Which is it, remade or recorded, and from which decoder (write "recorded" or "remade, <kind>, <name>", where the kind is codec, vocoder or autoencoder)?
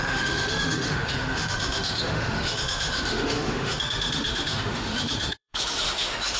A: remade, autoencoder, DAC-VAE